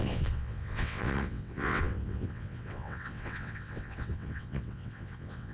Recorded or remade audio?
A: remade